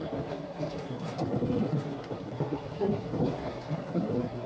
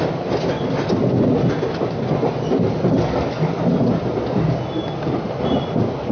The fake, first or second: first